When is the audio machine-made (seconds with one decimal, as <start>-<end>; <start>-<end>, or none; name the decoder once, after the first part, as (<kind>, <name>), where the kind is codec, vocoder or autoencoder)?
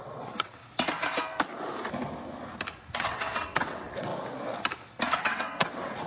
0.0-0.6 (vocoder, WaveNeXt); 3.0-4.1; 5.2-6.1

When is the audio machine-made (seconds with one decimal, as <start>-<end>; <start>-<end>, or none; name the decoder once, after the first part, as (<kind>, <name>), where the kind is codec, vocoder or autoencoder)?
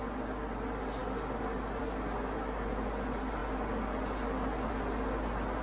none